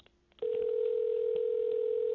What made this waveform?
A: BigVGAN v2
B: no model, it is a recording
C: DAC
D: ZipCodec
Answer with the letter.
B